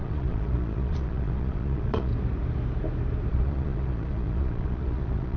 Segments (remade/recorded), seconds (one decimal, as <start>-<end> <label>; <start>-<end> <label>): 0.0-2.1 remade; 2.1-3.3 recorded; 3.3-5.4 remade